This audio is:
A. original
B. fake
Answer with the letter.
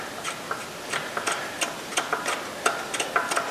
A